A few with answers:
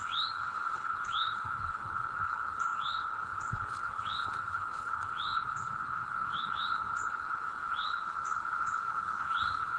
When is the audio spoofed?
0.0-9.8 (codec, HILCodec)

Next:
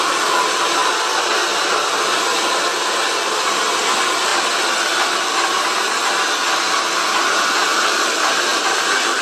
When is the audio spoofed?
none

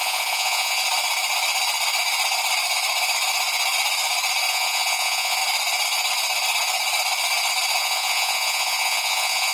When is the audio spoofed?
0.0-0.8 (vocoder, Vocos); 4.5-5.4; 7.8-9.5

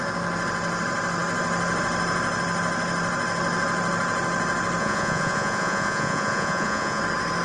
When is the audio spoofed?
4.8-7.0 (vocoder, Vocos)

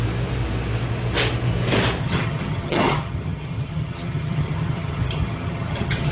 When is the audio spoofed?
2.0-6.1 (vocoder, HiFi-GAN)

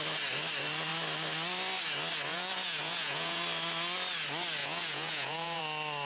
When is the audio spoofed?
2.3-3.4 (vocoder, Vocos); 4.6-5.6

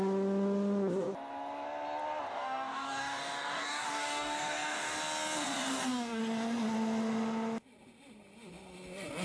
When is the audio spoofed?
2.3-5.0 (codec, DAC); 5.7-6.2